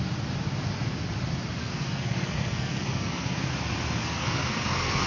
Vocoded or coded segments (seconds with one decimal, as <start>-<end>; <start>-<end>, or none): 1.6-3.5; 4.0-5.1